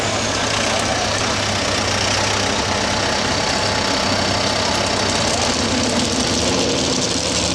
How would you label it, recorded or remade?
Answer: recorded